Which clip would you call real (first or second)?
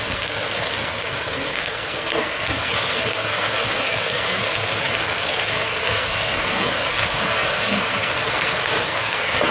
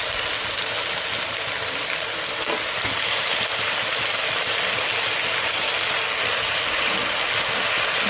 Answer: second